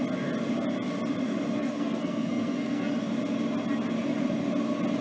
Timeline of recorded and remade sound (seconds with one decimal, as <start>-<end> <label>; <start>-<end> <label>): 0.0-1.6 recorded; 1.6-2.9 remade; 2.9-5.0 recorded